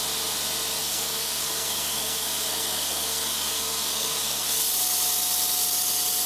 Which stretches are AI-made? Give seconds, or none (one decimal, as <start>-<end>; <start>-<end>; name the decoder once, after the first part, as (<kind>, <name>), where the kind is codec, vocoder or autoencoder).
0.8-4.6 (codec, SNAC)

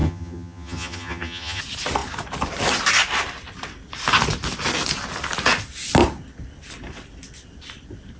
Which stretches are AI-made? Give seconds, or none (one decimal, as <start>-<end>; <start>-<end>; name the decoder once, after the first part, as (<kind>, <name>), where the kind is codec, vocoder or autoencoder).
0.0-1.6 (vocoder, HiFi-GAN)

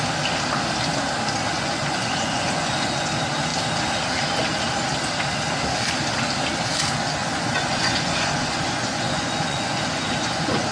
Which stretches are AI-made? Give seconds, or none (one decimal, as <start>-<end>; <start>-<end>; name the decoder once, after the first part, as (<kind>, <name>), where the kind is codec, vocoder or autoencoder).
1.5-3.1 (vocoder, Vocos); 7.2-10.7

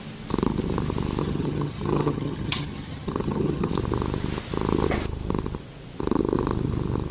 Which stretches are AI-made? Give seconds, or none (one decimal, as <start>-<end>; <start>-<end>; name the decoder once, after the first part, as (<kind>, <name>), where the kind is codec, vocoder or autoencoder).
1.2-3.7 (vocoder, HiFi-GAN)

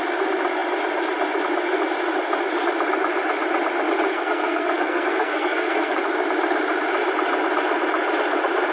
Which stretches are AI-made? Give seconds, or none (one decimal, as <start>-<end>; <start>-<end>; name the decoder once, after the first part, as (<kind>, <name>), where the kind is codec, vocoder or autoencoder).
4.1-6.0 (codec, SNAC)

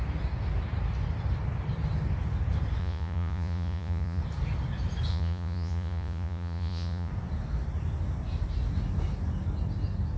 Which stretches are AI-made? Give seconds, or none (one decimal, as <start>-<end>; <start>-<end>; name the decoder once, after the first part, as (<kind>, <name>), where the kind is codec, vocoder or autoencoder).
2.8-4.2 (vocoder, Vocos); 5.1-7.1